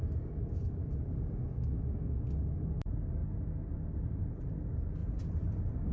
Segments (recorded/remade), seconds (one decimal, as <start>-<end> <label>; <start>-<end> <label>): 0.0-0.6 recorded; 0.6-1.2 remade; 1.2-5.0 recorded; 5.0-5.9 remade